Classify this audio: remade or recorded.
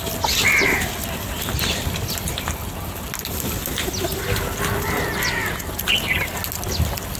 recorded